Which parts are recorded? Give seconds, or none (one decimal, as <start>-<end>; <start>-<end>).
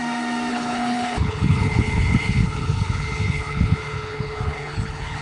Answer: 0.0-0.5